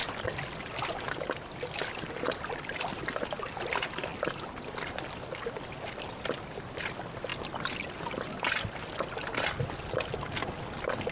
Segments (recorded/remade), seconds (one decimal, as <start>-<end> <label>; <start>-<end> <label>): 0.0-11.1 recorded